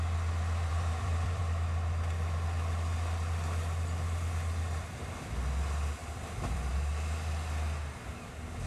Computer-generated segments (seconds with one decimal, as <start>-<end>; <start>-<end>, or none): 0.7-1.4; 6.0-6.7